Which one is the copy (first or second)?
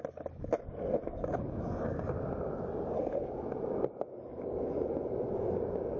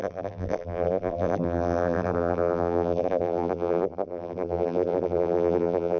second